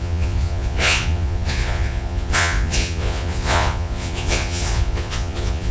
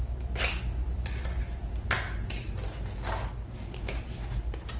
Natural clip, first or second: second